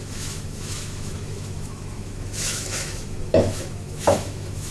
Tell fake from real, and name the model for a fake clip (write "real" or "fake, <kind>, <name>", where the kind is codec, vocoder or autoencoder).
fake, autoencoder, DAC-VAE